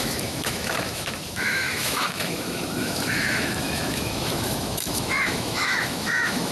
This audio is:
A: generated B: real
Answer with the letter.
A